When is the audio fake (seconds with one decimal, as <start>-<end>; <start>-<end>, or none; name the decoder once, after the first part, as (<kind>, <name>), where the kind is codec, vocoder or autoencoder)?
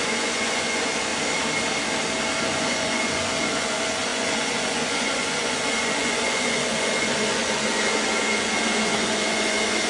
0.0-1.1 (vocoder, Vocos); 2.4-9.9